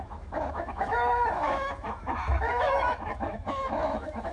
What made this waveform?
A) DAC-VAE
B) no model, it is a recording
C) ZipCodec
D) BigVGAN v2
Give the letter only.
A